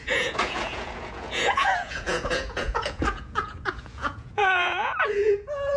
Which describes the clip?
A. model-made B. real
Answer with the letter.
A